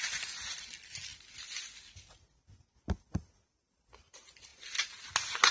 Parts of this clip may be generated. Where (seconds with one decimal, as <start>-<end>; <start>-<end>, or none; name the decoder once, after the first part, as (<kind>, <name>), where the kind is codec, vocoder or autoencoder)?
none